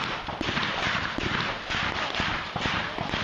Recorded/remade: remade